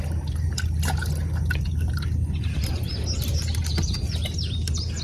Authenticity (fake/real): real